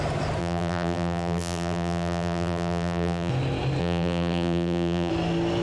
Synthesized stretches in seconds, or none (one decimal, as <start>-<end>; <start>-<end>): 0.4-3.3; 3.8-5.1